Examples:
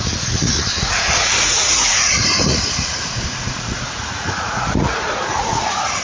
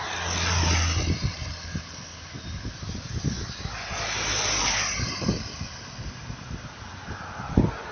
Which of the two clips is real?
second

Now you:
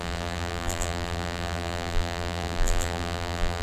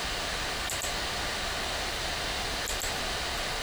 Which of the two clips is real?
second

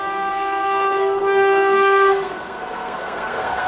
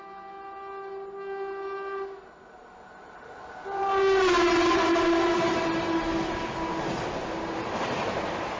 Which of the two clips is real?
second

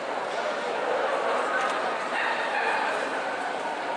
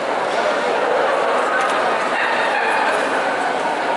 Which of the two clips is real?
second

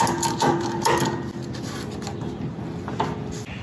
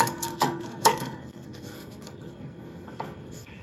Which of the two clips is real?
first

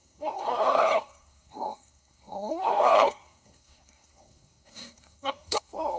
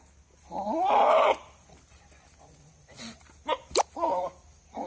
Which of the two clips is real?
second